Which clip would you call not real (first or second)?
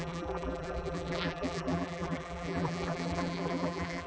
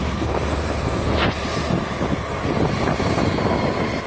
first